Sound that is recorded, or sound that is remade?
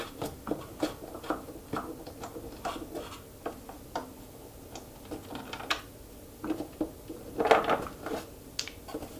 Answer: recorded